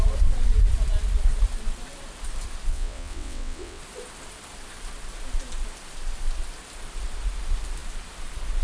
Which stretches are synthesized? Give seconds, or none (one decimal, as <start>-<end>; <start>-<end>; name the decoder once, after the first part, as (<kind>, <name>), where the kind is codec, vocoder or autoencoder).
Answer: 2.7-3.8 (vocoder, WaveNeXt)